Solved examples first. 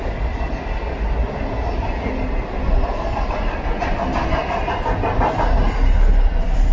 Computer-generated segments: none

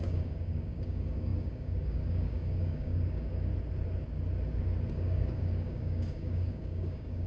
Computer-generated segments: 0.0-3.5 (codec, DAC); 4.9-7.3

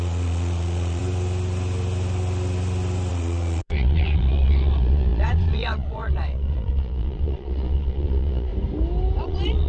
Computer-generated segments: 0.0-1.0 (vocoder, Vocos); 3.1-8.5; 9.2-9.7

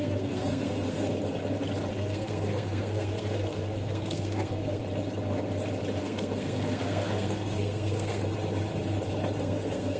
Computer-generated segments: 0.0-1.1 (codec, SNAC); 1.9-4.8; 6.0-8.2; 9.4-10.0

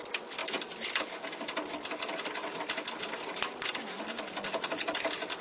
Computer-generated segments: none